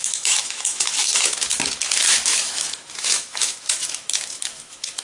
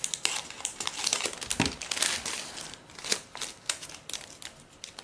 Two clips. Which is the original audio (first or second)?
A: second